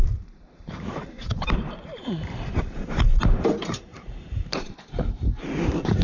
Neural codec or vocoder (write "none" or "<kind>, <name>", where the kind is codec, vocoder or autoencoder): vocoder, BigVGAN v2